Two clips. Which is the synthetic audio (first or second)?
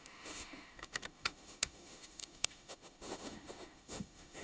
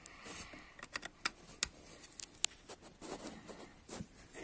first